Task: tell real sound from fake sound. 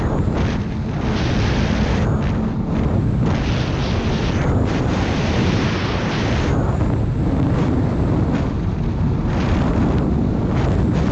real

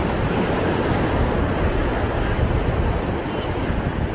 real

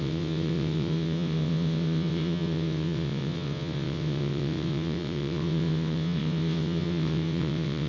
fake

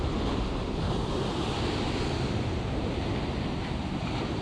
real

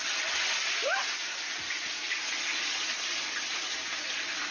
real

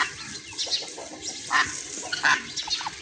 real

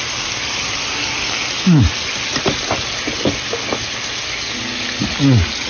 real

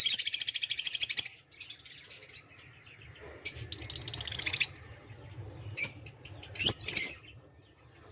real